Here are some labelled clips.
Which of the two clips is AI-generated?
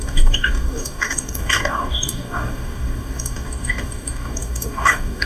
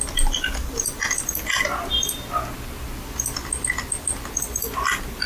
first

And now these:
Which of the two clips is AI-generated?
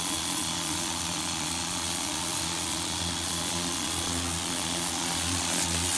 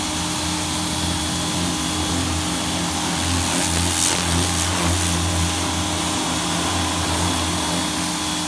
first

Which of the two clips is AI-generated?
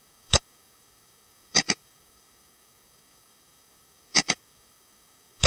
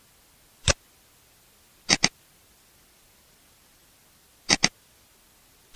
first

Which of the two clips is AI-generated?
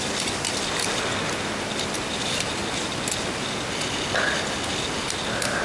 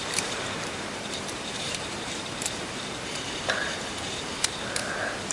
second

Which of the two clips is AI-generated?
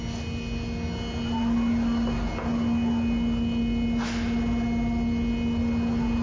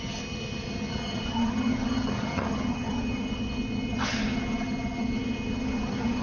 second